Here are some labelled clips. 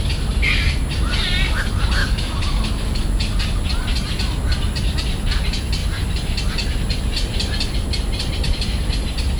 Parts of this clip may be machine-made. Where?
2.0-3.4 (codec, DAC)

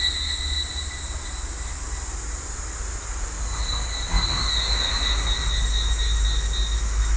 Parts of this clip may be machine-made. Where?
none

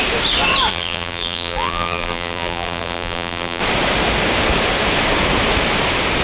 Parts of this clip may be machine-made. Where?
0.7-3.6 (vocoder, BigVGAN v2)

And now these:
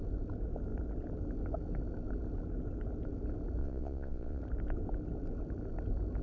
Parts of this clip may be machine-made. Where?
3.6-4.4 (vocoder, WaveNeXt)

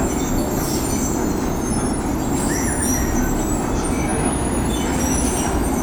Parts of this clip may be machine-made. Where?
none

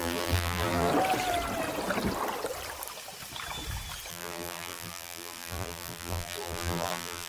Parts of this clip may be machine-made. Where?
0.0-0.9 (vocoder, BigVGAN v2); 4.1-7.3

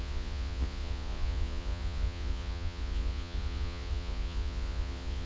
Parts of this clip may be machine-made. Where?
0.0-5.3 (vocoder, Vocos)